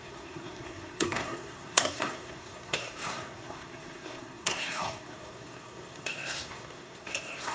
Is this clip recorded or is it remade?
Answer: remade